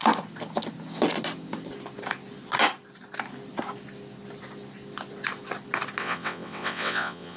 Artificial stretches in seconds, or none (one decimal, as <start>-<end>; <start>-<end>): 6.0-7.4